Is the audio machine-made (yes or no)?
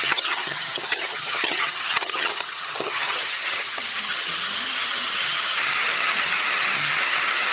yes